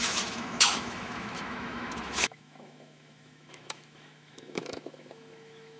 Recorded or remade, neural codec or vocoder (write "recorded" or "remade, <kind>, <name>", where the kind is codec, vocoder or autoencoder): remade, autoencoder, DAC-VAE